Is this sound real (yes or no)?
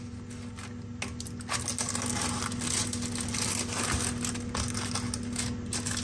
yes